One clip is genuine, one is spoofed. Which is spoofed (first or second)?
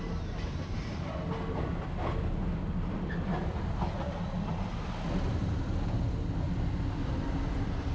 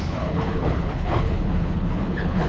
second